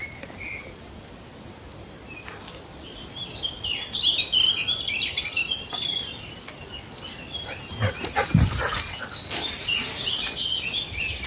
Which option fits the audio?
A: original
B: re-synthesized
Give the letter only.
A